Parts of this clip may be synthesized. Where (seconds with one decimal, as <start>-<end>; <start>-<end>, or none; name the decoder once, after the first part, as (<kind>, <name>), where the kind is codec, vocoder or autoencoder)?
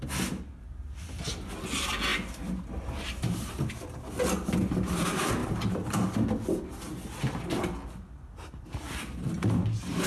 none